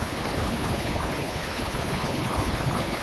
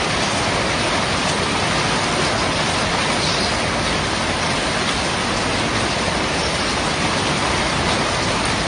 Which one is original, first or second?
second